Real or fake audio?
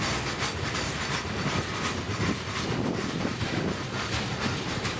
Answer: real